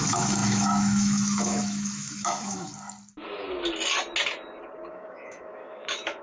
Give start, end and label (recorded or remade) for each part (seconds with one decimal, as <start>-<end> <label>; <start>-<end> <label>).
0.0-2.7 remade; 2.7-4.9 recorded; 4.9-6.2 remade